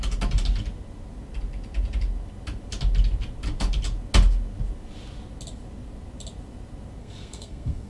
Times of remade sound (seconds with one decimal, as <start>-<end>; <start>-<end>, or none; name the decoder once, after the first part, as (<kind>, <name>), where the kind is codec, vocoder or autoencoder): 7.0-7.9 (codec, SNAC)